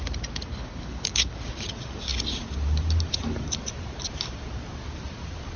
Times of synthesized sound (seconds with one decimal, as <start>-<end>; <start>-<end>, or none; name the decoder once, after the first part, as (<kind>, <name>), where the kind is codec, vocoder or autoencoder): 0.5-1.3 (codec, HILCodec)